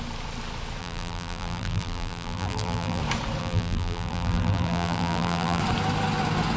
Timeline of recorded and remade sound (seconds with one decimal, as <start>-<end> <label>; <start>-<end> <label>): 0.0-0.8 recorded; 0.8-3.0 remade; 3.0-3.4 recorded; 3.4-5.6 remade; 5.6-6.6 recorded

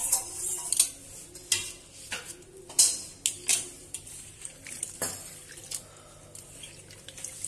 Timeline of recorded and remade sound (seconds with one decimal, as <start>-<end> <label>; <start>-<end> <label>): 0.0-3.5 recorded; 3.5-4.9 remade; 4.9-7.5 recorded

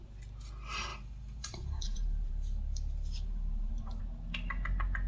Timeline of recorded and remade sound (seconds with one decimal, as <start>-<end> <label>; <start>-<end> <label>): 0.0-0.9 recorded; 0.9-4.0 remade; 4.0-5.1 recorded

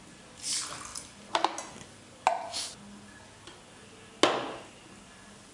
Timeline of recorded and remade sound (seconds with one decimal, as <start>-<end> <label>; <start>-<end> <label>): 0.0-5.5 recorded

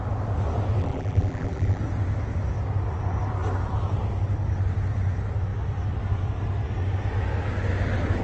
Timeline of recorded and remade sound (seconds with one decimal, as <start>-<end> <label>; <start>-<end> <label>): 0.0-0.8 recorded; 0.8-1.8 remade; 1.8-8.2 recorded

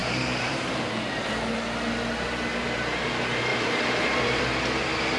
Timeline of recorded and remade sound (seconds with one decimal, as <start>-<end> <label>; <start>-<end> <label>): 0.0-1.3 remade; 1.3-3.5 recorded; 3.5-4.4 remade; 4.4-5.2 recorded

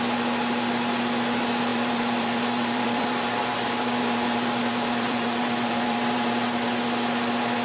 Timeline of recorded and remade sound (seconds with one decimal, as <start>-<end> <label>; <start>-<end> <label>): 0.0-1.7 recorded; 1.7-6.3 remade; 6.3-7.6 recorded

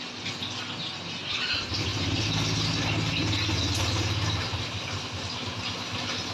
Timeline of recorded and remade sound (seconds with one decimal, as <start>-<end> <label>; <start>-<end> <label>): 0.0-6.3 recorded